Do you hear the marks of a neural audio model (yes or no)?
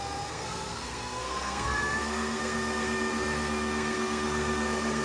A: yes